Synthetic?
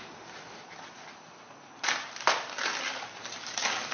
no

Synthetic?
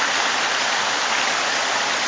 no